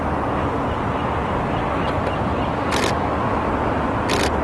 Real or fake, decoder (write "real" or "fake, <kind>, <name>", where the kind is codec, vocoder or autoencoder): real